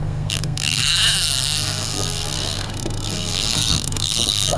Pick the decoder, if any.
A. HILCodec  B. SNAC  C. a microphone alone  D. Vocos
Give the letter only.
B